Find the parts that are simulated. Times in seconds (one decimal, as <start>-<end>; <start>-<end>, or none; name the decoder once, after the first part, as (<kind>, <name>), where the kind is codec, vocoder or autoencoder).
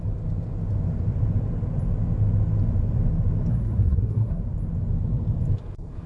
3.5-4.4 (codec, SNAC)